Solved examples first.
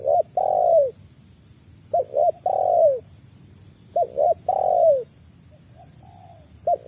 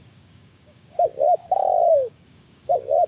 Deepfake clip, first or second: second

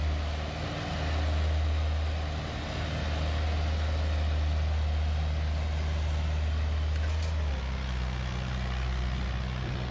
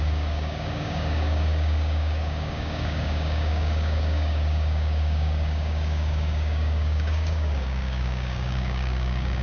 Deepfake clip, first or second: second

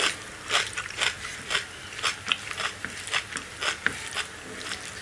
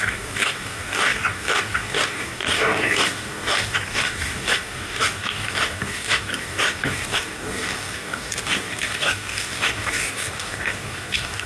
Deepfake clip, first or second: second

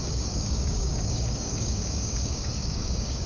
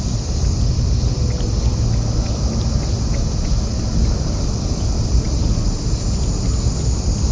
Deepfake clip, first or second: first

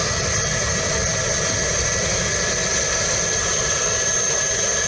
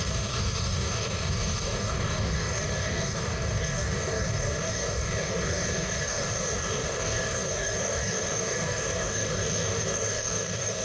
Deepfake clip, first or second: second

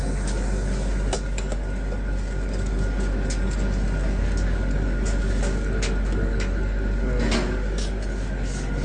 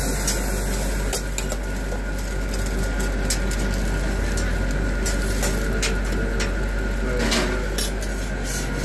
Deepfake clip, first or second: first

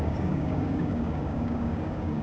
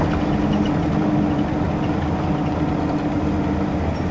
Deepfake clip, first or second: first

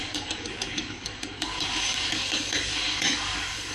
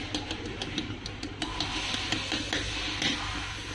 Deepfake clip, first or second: first